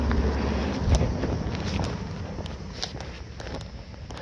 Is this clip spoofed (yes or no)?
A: no